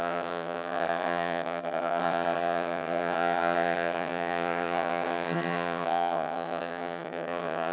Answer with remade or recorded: remade